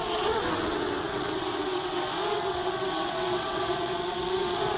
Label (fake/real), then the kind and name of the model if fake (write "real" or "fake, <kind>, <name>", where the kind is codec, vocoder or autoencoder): fake, vocoder, WaveNeXt